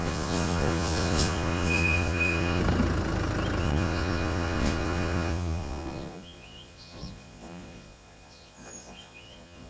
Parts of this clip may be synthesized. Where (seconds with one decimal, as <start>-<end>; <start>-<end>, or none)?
0.0-2.6; 3.6-9.7